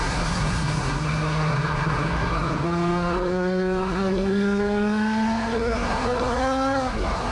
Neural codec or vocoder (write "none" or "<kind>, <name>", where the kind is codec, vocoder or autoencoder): codec, SNAC